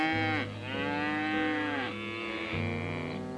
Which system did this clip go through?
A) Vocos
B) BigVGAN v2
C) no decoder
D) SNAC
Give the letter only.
C